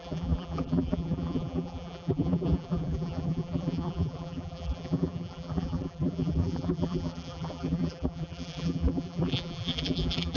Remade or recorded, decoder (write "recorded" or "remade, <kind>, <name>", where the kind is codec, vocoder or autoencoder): remade, vocoder, BigVGAN v2